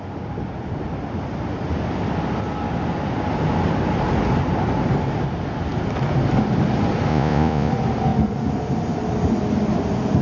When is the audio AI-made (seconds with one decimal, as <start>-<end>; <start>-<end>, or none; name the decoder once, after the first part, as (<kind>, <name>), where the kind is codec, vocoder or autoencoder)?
7.1-7.7 (vocoder, Vocos)